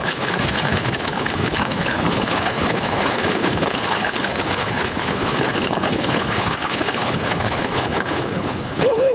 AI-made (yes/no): yes